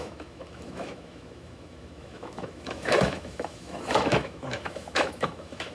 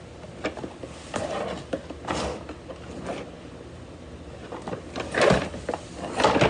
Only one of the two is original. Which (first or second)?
second